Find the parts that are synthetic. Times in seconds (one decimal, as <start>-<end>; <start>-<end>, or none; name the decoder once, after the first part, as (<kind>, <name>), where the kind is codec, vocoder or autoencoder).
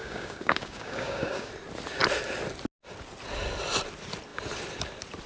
0.0-1.5 (codec, DAC)